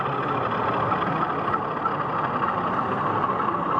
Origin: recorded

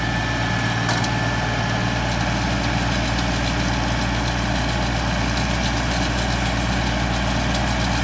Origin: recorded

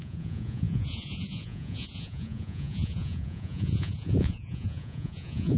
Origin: remade